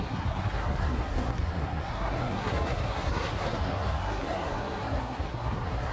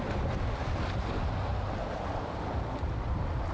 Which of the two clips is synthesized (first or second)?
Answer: first